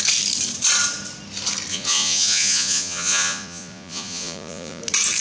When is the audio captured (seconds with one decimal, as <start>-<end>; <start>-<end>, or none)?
0.0-1.7; 4.8-5.2